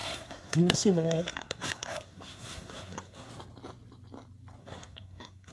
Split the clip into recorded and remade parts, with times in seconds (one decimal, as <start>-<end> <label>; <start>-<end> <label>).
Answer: 0.0-3.3 remade; 3.3-4.6 recorded; 4.6-5.5 remade

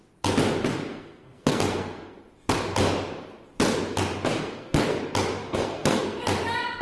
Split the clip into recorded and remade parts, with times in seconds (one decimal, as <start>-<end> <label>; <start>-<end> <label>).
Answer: 0.0-0.9 recorded; 0.9-2.2 remade; 2.2-4.4 recorded; 4.4-5.0 remade; 5.0-5.4 recorded; 5.4-6.2 remade; 6.2-6.8 recorded